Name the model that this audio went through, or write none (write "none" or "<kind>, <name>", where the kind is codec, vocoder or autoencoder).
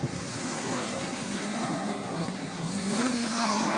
codec, SNAC